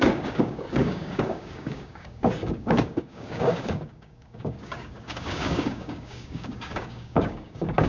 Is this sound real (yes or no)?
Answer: no